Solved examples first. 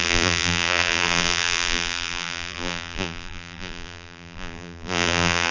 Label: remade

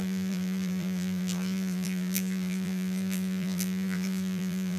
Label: remade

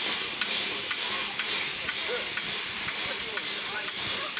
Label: remade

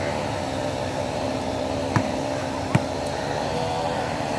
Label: remade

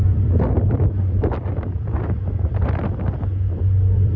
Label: remade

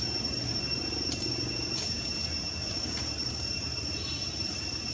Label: remade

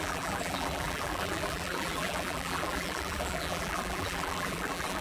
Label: remade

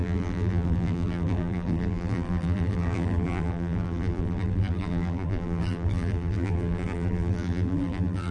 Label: remade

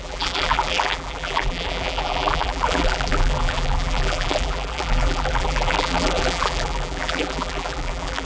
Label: remade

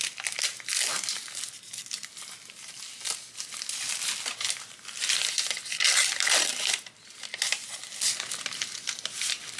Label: recorded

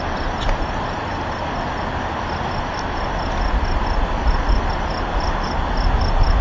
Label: recorded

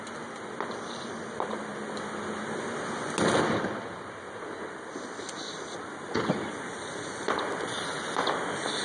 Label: recorded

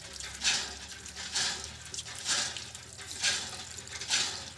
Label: recorded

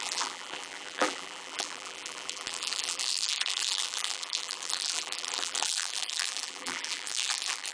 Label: remade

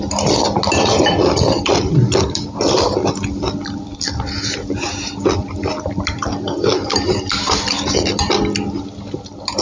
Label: remade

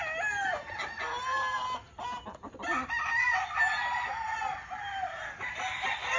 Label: recorded